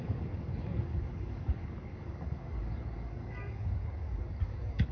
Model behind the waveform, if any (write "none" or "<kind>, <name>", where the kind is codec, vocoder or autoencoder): codec, DAC